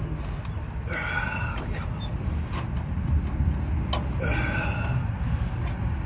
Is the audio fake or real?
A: real